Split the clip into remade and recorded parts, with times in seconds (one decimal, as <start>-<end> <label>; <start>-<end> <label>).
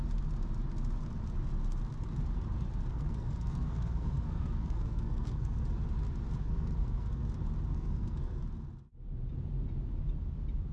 0.0-2.9 recorded; 2.9-5.6 remade; 5.6-6.4 recorded; 6.4-7.2 remade; 7.2-7.7 recorded; 7.7-8.4 remade; 8.4-10.7 recorded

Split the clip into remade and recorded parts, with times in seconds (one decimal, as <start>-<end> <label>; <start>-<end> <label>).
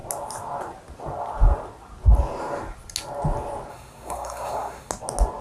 0.0-3.7 recorded; 3.7-4.9 remade; 4.9-5.4 recorded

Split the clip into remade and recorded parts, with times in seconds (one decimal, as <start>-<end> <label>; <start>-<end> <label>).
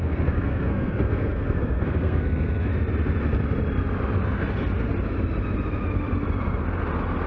0.0-2.7 remade; 2.7-7.3 recorded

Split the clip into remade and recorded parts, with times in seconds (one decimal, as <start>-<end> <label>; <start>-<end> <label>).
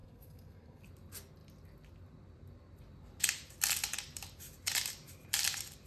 0.0-0.8 remade; 0.8-5.9 recorded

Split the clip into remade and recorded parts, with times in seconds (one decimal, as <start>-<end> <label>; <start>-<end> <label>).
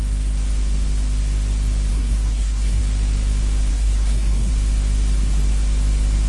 0.0-1.9 recorded; 1.9-2.8 remade; 2.8-3.7 recorded; 3.7-4.5 remade; 4.5-6.3 recorded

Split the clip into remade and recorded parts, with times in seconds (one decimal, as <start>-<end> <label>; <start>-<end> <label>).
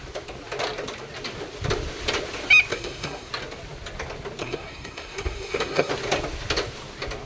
0.0-2.7 recorded; 2.7-3.3 remade; 3.3-4.4 recorded; 4.4-5.9 remade; 5.9-7.3 recorded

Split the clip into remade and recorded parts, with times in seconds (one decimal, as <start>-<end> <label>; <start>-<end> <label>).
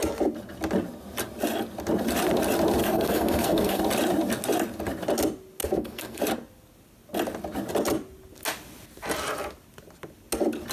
0.0-2.8 recorded; 2.8-3.8 remade; 3.8-5.6 recorded; 5.6-6.2 remade; 6.2-10.7 recorded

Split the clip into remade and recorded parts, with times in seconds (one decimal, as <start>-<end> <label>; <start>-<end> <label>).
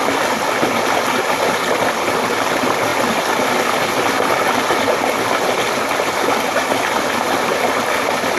0.0-8.4 recorded